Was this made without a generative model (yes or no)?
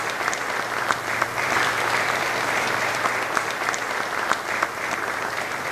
no